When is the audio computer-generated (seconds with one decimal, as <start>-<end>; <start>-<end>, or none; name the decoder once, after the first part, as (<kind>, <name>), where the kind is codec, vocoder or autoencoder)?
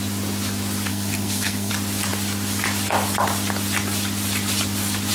0.9-1.7 (codec, SNAC)